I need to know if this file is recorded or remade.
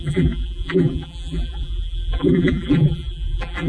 remade